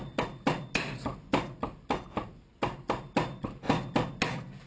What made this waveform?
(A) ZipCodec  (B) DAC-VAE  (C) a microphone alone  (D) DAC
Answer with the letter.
C